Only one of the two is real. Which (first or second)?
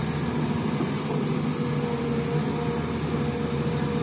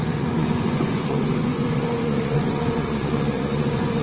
first